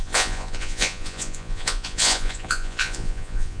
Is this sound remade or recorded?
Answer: remade